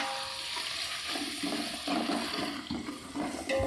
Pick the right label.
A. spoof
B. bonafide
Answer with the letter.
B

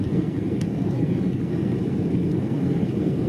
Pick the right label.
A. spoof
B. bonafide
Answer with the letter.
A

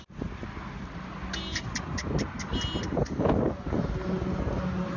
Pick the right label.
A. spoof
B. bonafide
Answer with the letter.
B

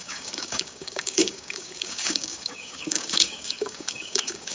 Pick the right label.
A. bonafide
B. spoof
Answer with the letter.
B